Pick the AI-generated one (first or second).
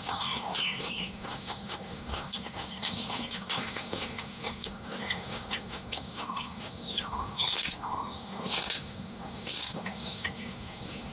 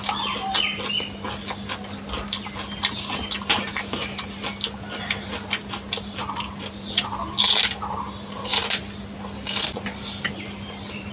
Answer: first